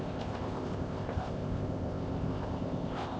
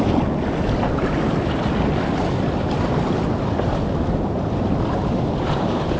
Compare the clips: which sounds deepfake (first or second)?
first